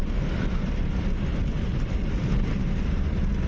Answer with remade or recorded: recorded